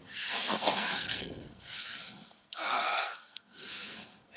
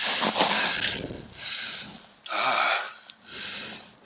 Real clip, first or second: second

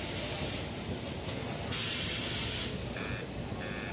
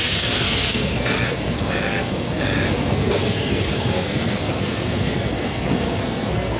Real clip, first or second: first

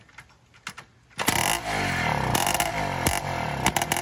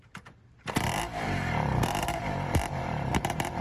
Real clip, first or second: first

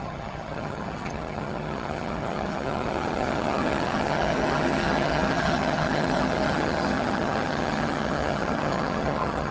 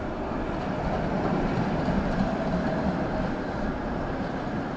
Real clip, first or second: second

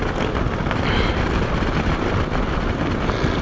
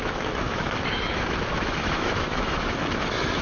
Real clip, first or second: first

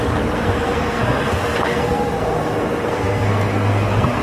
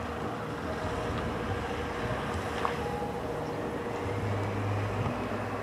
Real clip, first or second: second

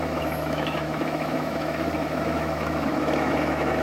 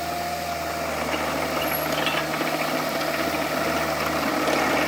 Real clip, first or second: second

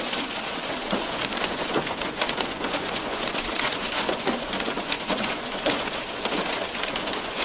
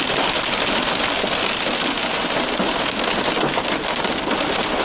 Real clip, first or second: second